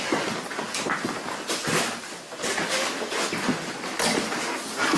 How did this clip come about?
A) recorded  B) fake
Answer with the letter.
A